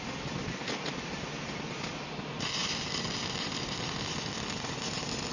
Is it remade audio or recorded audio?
recorded